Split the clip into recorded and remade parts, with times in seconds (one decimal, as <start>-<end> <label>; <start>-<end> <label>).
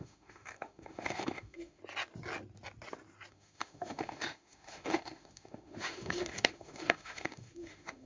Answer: 0.0-1.8 remade; 1.8-3.3 recorded; 3.3-8.1 remade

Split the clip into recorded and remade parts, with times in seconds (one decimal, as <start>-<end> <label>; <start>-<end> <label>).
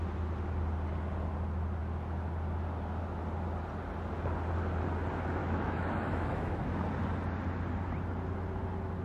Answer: 0.0-5.4 recorded; 5.4-6.6 remade; 6.6-9.0 recorded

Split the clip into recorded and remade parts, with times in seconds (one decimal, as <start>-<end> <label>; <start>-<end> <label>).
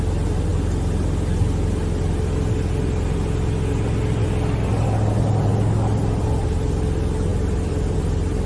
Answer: 0.0-8.5 recorded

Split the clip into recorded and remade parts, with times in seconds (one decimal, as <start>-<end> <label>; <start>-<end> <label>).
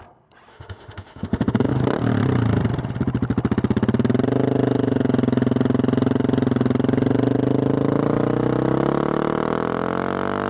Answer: 0.0-0.5 recorded; 0.5-1.7 remade; 1.7-10.5 recorded